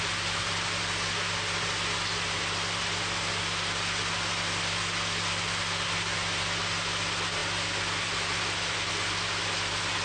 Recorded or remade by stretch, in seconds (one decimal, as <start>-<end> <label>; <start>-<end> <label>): 0.0-10.0 recorded